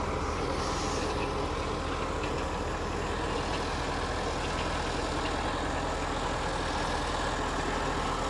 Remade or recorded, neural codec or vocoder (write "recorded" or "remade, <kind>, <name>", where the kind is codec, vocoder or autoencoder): recorded